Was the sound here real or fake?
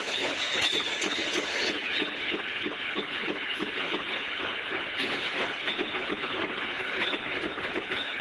fake